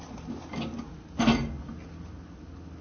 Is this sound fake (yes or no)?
no